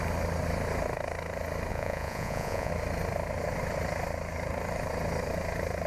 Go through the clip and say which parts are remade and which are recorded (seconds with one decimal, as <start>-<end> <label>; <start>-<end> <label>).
0.0-1.7 recorded; 1.7-2.7 remade; 2.7-5.9 recorded